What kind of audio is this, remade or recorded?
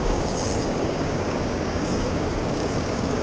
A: remade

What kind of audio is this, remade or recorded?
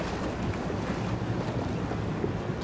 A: recorded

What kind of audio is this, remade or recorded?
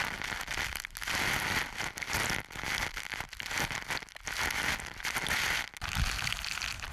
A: recorded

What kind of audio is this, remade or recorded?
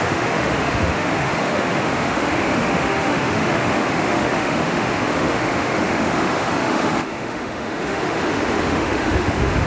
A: remade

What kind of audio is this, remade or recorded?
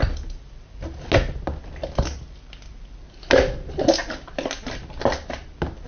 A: recorded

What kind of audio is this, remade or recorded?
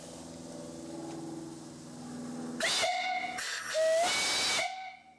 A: recorded